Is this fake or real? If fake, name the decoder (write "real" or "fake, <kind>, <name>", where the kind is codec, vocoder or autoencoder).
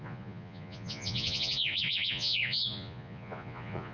fake, vocoder, Vocos